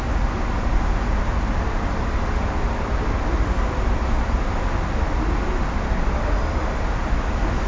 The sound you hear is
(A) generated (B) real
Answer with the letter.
B